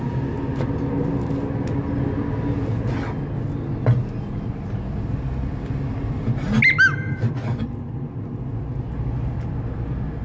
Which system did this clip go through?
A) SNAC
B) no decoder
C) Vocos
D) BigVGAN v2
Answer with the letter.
B